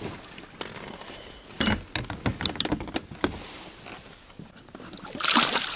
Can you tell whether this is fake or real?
real